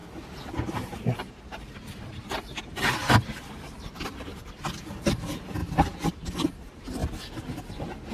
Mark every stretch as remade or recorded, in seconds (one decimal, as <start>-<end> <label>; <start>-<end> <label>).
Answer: 0.0-0.6 recorded; 0.6-5.6 remade; 5.6-6.1 recorded; 6.1-7.0 remade; 7.0-8.1 recorded